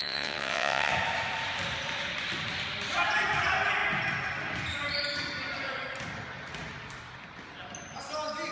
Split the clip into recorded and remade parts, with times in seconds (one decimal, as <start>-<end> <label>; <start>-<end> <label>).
0.0-0.9 remade; 0.9-8.5 recorded